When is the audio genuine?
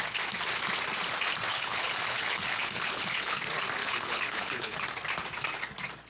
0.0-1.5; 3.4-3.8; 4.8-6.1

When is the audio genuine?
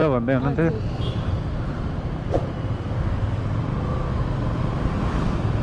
0.0-5.6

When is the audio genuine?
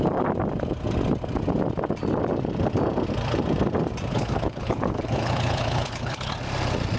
0.0-4.1; 6.3-7.0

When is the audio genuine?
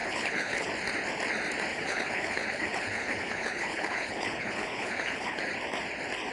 0.7-1.7; 5.5-6.3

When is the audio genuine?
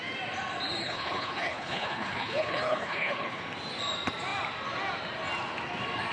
0.0-0.8; 3.4-6.1